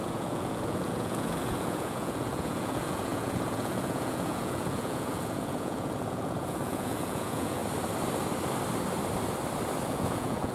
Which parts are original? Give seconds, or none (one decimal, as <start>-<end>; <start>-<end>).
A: 7.6-9.9